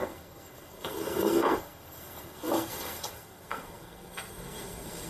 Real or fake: fake